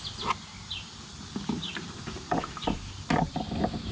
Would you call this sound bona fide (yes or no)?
yes